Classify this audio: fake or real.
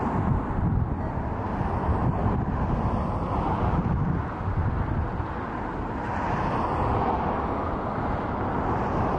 real